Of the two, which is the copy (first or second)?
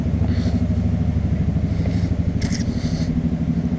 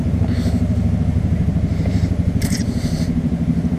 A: second